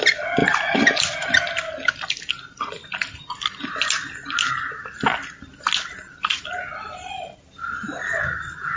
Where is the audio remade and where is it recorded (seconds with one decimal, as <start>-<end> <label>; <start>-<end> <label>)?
0.0-8.8 recorded